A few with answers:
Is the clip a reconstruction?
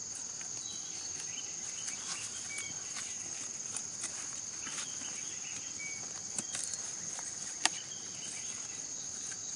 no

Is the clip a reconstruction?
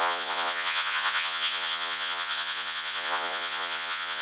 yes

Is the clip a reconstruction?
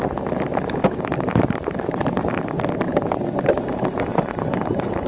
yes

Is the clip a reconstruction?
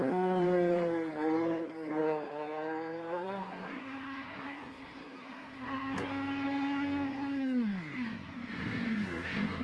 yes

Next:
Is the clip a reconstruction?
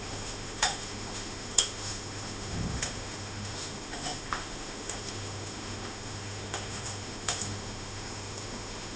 yes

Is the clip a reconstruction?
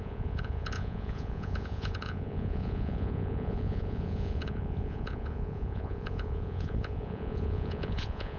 yes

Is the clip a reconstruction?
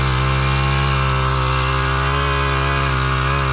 no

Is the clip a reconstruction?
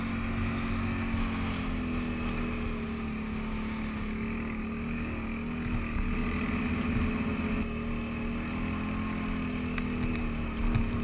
no